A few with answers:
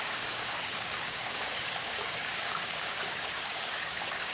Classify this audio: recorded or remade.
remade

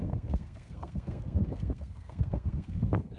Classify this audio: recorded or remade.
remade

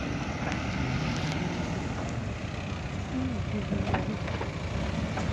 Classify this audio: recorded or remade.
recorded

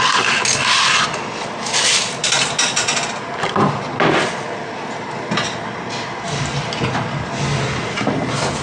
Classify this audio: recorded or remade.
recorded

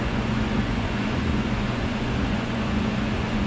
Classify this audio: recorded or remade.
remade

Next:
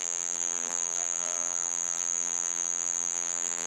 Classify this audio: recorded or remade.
remade